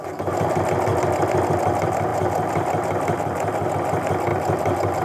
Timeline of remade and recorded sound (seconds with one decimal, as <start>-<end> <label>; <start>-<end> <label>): 0.0-5.0 recorded